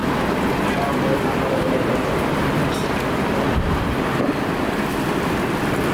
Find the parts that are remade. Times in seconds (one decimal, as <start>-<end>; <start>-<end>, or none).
1.1-5.9